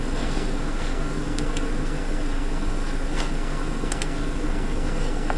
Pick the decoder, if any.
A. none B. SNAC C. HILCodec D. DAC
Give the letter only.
B